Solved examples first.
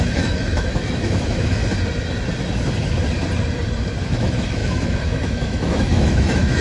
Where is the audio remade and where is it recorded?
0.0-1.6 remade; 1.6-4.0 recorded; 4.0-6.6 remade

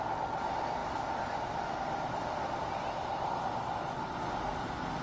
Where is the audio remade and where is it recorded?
0.0-5.0 recorded

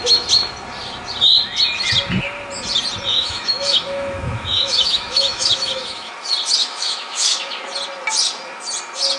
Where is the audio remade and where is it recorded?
0.0-3.1 recorded; 3.1-6.1 remade; 6.1-6.6 recorded; 6.6-7.4 remade; 7.4-9.2 recorded